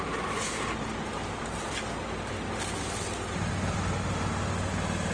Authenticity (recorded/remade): recorded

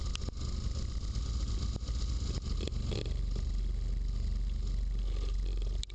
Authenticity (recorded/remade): recorded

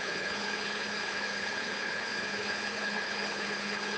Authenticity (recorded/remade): remade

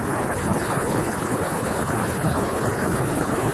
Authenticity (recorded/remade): remade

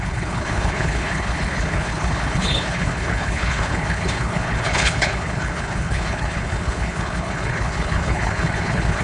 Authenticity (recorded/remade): remade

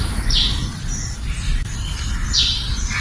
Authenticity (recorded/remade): recorded